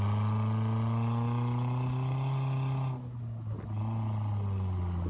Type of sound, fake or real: real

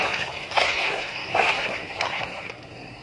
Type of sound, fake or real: fake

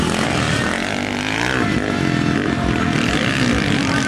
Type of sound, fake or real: real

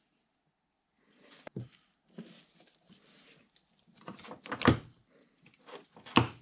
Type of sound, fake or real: real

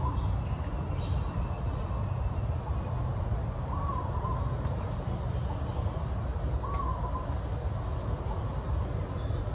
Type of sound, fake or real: real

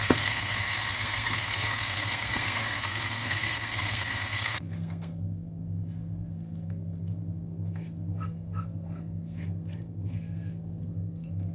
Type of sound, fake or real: fake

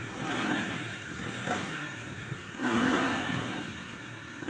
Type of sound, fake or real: fake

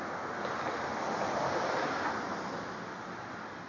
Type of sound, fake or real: real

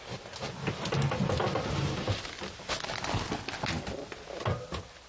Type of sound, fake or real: real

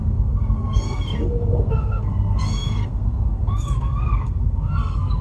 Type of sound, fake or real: fake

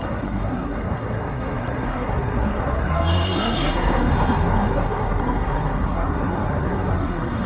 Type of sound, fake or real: fake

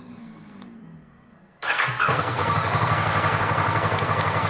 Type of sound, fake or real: fake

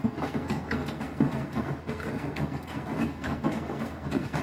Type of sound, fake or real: fake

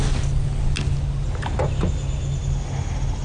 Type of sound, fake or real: real